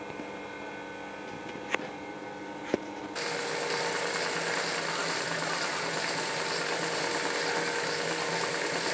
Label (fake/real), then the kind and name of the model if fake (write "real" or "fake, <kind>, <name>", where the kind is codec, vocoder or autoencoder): real